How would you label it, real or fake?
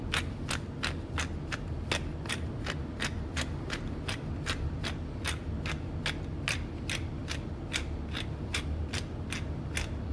real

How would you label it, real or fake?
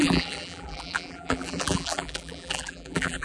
fake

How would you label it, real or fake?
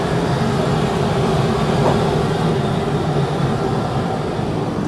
fake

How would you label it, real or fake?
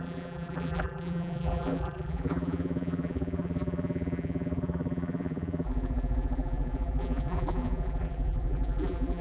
fake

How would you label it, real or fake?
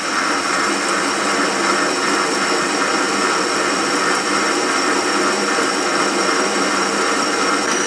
fake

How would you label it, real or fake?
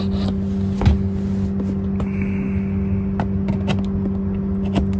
real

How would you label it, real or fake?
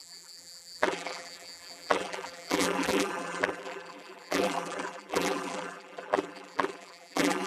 fake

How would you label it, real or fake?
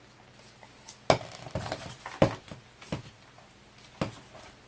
real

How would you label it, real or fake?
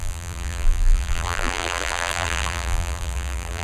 fake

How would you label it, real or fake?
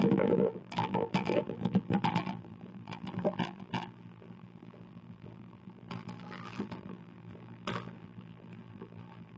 fake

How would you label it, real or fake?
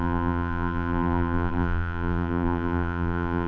fake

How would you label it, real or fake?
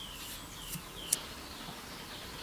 real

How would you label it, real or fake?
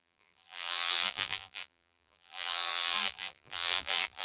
fake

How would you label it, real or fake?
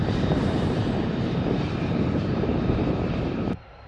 fake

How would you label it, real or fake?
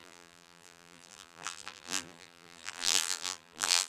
fake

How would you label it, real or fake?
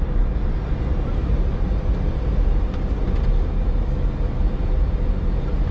real